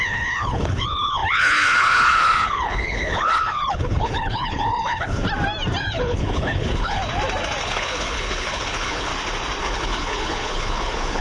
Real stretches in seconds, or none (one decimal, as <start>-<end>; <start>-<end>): 5.2-5.8; 7.0-7.6; 9.1-9.6